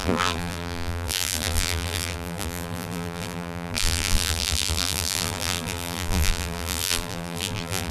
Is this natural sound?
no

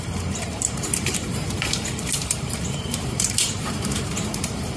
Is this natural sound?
no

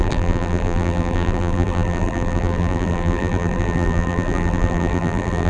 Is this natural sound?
no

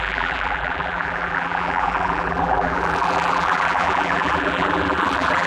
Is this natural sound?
no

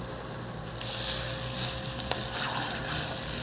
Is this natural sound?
yes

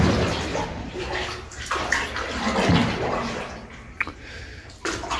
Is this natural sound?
yes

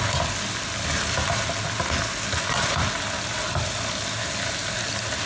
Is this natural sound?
yes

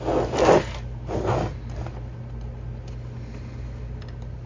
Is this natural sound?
yes